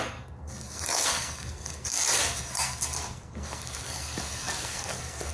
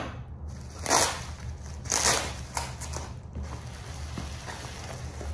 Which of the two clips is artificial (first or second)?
first